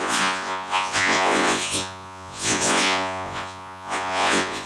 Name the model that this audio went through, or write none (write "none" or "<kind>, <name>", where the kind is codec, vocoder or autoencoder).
vocoder, Vocos